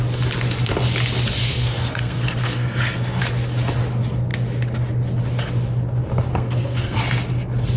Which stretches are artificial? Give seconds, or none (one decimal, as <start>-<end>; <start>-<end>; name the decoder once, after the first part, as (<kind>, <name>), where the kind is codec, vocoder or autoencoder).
1.4-3.2 (codec, SNAC); 6.3-7.0